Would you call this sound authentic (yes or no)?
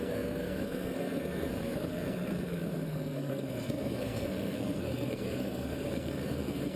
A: no